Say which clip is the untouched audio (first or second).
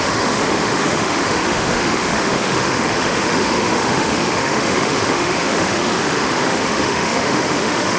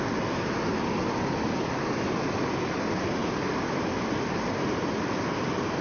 second